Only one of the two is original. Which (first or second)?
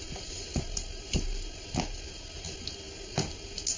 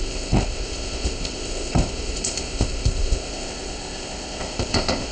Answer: first